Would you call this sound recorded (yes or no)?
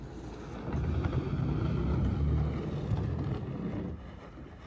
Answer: yes